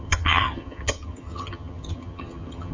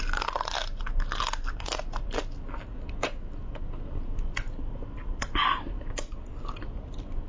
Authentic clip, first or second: second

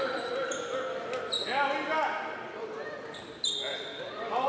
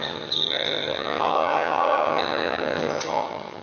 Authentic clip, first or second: first